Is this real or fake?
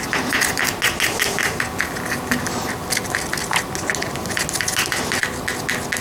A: real